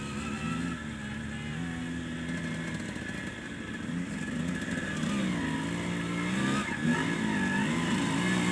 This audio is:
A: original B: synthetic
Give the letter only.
A